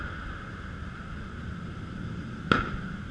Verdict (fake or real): real